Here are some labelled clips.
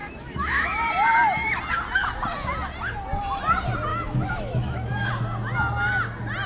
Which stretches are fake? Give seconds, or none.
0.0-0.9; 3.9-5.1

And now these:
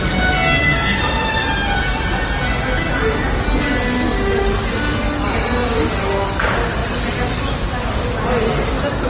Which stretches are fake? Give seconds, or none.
none

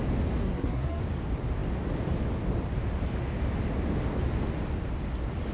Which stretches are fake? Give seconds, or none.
0.4-1.0

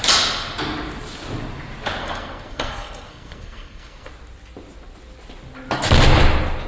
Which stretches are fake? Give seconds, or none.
2.0-4.1

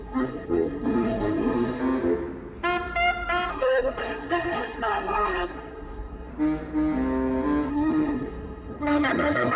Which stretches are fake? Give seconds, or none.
0.0-1.8; 3.5-6.3; 7.7-9.6

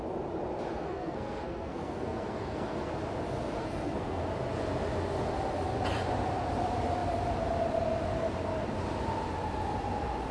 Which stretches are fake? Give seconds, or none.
0.7-2.9; 3.6-4.2